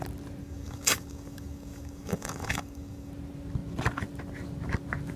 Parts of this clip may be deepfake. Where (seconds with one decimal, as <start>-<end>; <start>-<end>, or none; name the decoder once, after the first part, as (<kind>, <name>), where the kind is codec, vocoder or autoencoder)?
0.4-3.1 (codec, DAC)